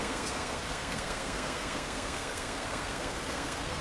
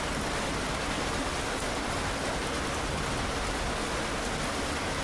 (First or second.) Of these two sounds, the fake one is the first